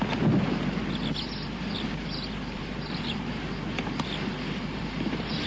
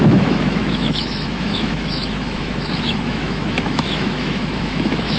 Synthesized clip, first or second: second